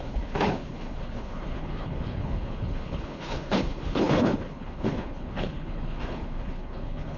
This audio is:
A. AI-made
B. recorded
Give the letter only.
A